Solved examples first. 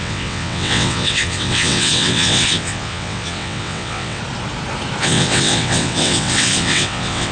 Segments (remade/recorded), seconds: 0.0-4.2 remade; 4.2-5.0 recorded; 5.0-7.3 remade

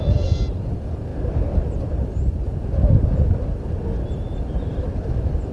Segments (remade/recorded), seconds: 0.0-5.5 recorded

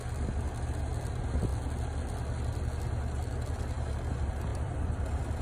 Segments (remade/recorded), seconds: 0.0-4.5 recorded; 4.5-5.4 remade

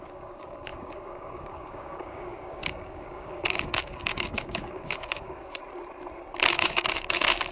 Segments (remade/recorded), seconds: 0.0-5.6 remade; 5.6-6.5 recorded; 6.5-7.5 remade

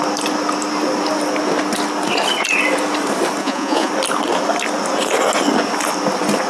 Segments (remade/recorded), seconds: 0.0-3.4 recorded; 3.4-3.9 remade; 3.9-6.5 recorded